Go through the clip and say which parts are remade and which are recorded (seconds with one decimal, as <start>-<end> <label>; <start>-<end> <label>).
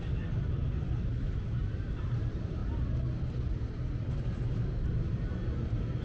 0.0-6.0 recorded